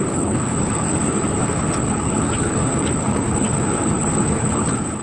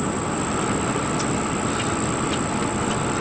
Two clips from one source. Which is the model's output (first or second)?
first